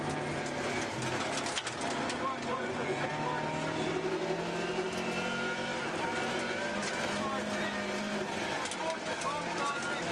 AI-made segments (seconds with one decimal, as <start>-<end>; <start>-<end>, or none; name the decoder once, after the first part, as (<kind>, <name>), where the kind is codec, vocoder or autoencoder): 2.5-3.1 (vocoder, Vocos)